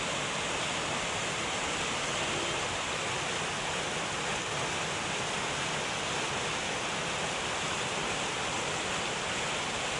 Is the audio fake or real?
real